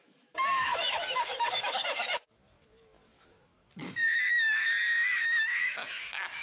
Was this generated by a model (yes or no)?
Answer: yes